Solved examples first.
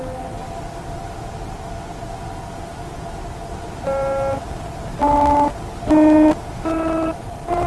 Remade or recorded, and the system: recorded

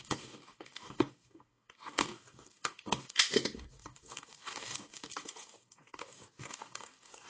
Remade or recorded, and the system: remade, codec, DAC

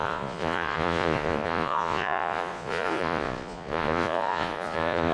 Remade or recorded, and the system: remade, vocoder, Vocos